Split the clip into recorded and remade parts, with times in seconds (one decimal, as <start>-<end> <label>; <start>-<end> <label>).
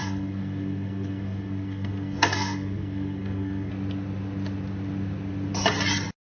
0.0-3.7 remade; 3.7-6.2 recorded